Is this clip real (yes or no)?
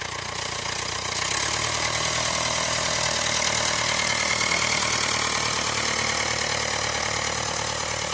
yes